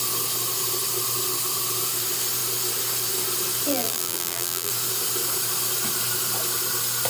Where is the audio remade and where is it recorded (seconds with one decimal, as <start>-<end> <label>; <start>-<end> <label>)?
0.0-3.7 recorded; 3.7-4.7 remade; 4.7-7.1 recorded